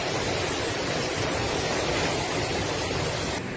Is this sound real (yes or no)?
yes